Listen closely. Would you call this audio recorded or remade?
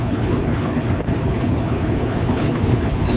remade